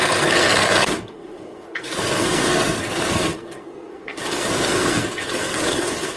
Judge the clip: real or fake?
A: fake